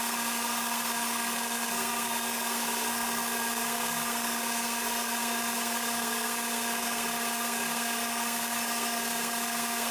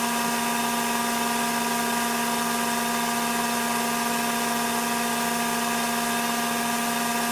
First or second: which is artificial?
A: first